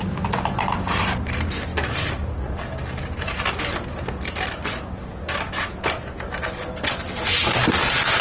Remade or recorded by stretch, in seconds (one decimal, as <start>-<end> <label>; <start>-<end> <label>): 0.0-8.2 recorded